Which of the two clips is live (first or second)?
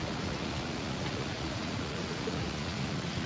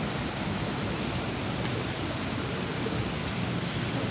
second